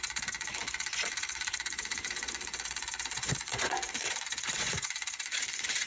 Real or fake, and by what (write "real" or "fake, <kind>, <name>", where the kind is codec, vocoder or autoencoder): fake, vocoder, Vocos